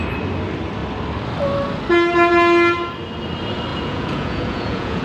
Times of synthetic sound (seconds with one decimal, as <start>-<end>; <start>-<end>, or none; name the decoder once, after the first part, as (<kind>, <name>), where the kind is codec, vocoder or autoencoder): 3.7-5.0 (vocoder, Vocos)